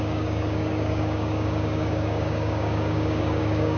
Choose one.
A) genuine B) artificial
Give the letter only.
B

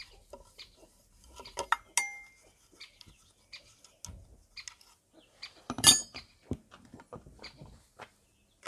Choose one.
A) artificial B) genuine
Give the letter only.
B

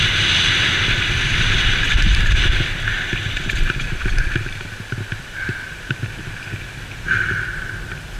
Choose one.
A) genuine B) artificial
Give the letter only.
B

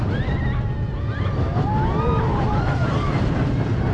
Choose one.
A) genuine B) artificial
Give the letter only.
A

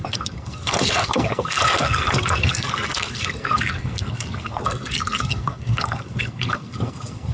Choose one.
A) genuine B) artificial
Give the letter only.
B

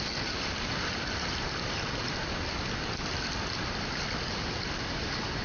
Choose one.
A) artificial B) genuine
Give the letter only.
B